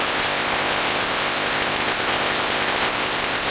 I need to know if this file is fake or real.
fake